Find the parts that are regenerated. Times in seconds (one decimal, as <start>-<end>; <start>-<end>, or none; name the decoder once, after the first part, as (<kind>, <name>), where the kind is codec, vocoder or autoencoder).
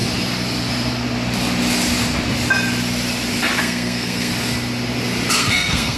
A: 3.6-4.3 (codec, SNAC); 5.3-6.0